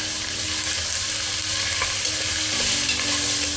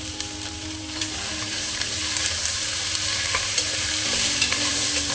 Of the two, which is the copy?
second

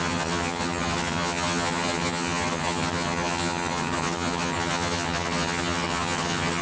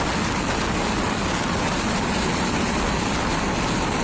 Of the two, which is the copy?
first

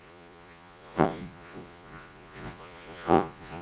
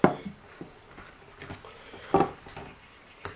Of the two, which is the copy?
first